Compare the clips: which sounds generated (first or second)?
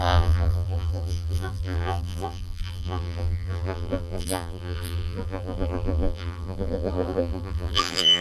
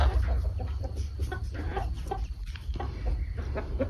first